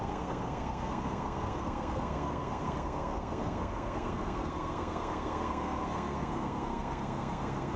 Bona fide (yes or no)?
no